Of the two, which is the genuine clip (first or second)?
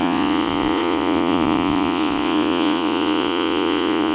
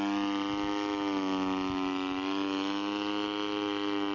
second